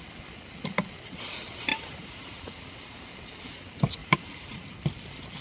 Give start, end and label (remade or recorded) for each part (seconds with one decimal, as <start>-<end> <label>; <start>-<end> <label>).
0.0-1.7 recorded; 1.7-2.3 remade; 2.3-4.0 recorded; 4.0-4.7 remade; 4.7-5.4 recorded